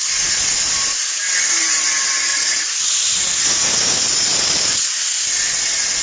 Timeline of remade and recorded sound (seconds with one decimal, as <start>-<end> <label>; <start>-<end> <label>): 0.0-2.3 recorded; 2.3-2.9 remade; 2.9-4.3 recorded; 4.3-5.3 remade; 5.3-6.0 recorded